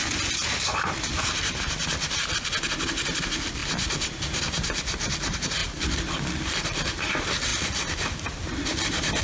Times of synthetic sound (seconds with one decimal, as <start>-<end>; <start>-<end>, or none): 3.6-4.4; 5.6-7.1; 7.5-9.2